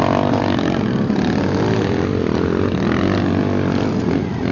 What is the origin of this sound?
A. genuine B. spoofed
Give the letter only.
A